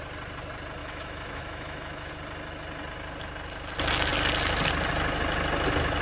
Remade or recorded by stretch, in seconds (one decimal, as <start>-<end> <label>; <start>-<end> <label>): 0.0-0.8 recorded; 0.8-2.1 remade; 2.1-6.0 recorded

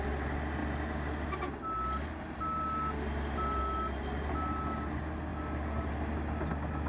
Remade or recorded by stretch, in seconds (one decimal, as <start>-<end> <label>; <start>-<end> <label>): 0.0-6.9 recorded

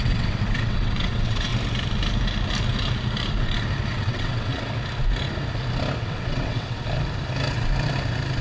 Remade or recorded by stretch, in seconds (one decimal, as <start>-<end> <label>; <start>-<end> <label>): 0.0-1.5 remade; 1.5-3.9 recorded; 3.9-4.5 remade; 4.5-6.0 recorded; 6.0-6.8 remade; 6.8-8.4 recorded